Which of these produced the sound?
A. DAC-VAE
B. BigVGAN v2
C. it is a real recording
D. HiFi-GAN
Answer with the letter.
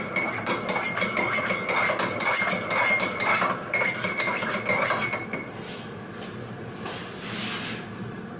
C